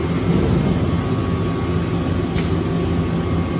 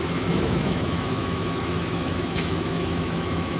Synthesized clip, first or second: second